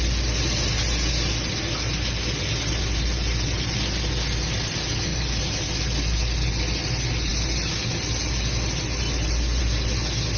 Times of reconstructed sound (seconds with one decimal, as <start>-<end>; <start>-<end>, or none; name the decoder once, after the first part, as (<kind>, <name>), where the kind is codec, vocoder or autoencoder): 5.1-5.6 (vocoder, BigVGAN v2)